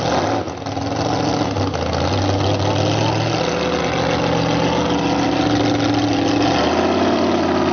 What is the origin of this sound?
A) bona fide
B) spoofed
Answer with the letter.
A